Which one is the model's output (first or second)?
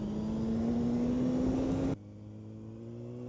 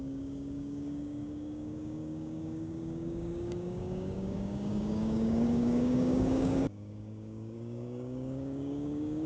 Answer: second